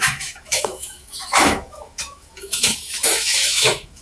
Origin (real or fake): fake